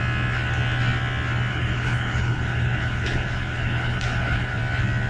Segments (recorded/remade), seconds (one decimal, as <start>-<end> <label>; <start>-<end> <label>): 0.0-1.5 recorded; 1.5-4.6 remade; 4.6-5.1 recorded